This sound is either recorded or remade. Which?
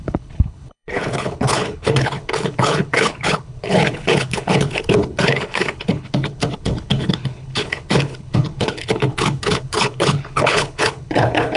remade